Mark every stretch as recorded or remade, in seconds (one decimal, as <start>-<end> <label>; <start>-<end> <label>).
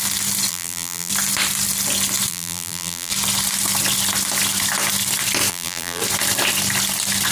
0.0-0.5 recorded; 0.5-1.1 remade; 1.1-2.3 recorded; 2.3-3.1 remade; 3.1-5.5 recorded; 5.5-6.0 remade; 6.0-7.3 recorded